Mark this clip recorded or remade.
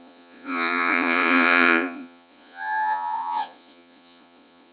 remade